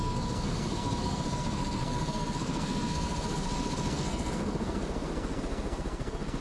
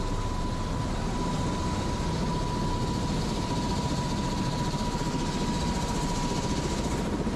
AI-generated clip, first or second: first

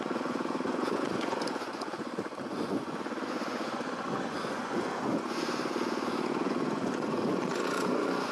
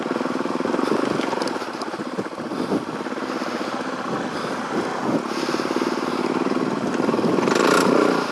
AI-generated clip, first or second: first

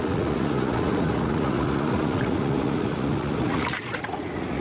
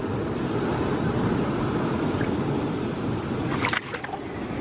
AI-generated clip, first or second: first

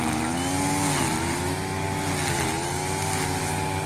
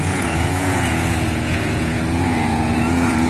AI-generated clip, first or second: second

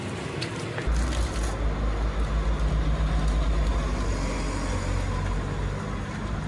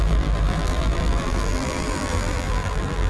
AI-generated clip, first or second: second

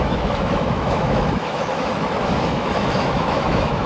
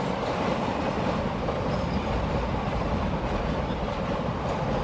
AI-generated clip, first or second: first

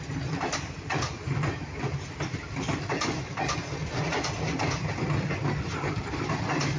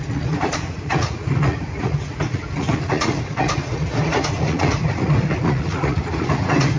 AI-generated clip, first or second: second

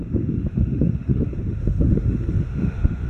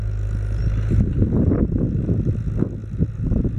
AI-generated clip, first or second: first